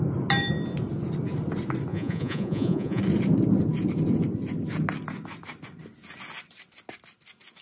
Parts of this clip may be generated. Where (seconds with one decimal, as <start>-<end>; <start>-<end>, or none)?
1.9-3.0

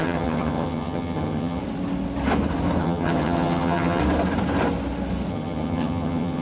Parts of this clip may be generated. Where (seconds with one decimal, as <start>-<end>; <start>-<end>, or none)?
0.0-1.6; 2.8-4.0; 5.3-6.4